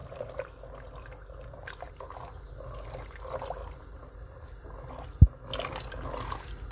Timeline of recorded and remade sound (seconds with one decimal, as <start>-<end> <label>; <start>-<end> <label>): 0.0-1.9 remade; 1.9-3.6 recorded; 3.6-4.9 remade; 4.9-6.7 recorded

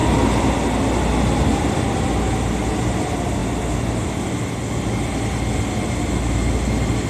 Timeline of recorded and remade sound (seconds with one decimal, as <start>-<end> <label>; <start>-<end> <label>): 0.0-7.1 recorded

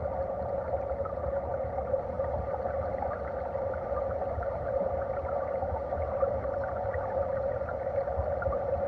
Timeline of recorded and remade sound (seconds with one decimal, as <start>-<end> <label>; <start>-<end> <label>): 0.0-1.5 remade; 1.5-4.4 recorded; 4.4-8.9 remade